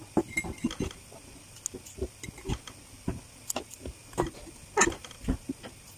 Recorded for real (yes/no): yes